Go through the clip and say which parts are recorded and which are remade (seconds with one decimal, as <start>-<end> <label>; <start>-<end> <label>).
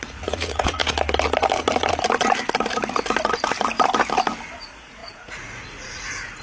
0.0-0.8 remade; 0.8-4.6 recorded; 4.6-6.4 remade